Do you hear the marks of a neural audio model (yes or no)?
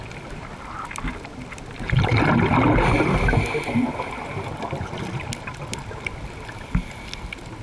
no